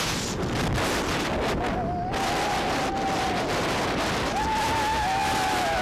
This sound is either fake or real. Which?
real